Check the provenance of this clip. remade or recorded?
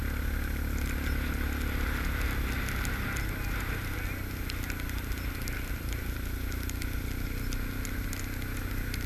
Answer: recorded